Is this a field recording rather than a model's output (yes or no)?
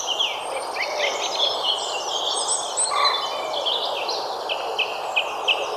yes